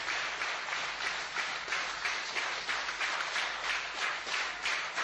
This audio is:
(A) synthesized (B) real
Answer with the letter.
B